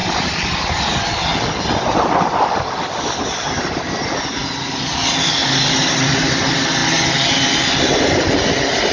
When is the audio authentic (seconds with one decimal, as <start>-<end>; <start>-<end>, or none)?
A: 0.0-5.4; 6.1-8.9